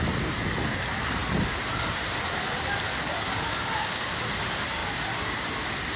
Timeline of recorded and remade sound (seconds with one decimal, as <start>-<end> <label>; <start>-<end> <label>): 0.0-2.9 recorded; 2.9-4.1 remade; 4.1-6.0 recorded